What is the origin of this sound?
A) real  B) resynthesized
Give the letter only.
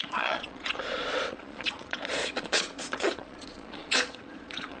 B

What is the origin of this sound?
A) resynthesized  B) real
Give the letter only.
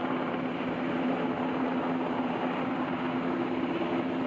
B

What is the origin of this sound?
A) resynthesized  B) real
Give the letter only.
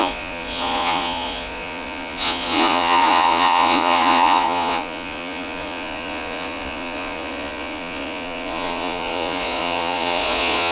A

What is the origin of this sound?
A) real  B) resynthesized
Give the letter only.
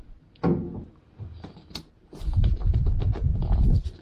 A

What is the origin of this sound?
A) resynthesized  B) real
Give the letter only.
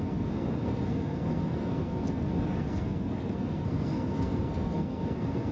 A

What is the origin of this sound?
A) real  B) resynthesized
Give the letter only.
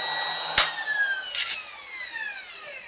A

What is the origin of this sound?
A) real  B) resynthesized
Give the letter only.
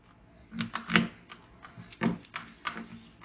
A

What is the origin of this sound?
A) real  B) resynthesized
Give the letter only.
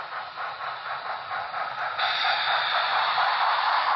A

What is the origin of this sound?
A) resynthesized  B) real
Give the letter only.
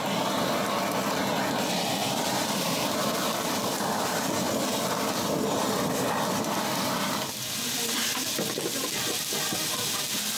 B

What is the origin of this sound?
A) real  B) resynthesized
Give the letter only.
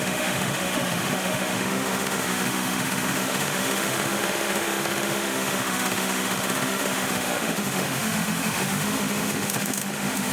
B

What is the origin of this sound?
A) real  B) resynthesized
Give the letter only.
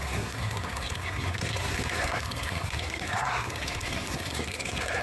B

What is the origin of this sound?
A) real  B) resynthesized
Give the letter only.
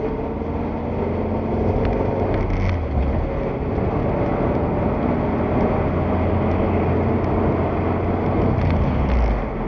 A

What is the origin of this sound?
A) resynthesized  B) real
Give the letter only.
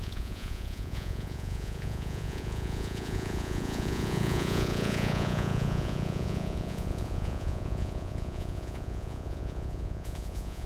A